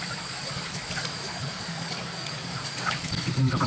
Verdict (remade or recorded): remade